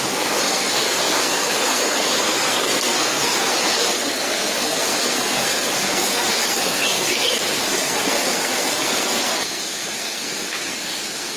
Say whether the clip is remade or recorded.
remade